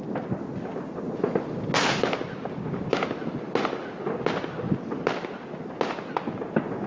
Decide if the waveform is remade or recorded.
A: recorded